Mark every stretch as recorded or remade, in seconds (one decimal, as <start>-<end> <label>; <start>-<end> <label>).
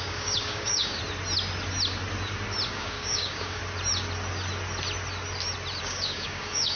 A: 0.0-1.0 remade; 1.0-2.7 recorded; 2.7-3.6 remade; 3.6-5.8 recorded; 5.8-6.8 remade